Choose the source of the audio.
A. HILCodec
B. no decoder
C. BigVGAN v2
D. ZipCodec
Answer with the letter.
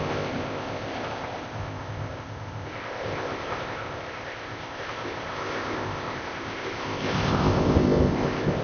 D